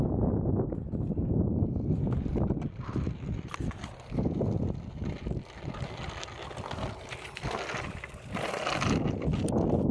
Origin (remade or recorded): recorded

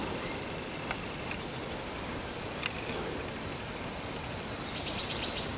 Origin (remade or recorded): remade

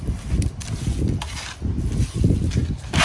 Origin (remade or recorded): recorded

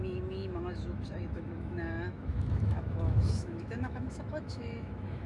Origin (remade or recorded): remade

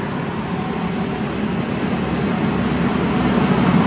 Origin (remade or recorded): recorded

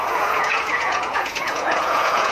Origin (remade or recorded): remade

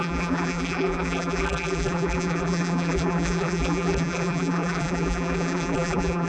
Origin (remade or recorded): remade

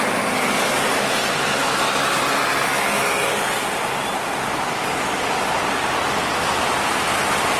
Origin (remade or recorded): recorded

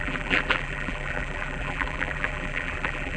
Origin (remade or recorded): remade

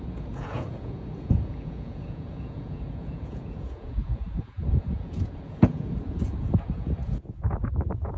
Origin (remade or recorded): remade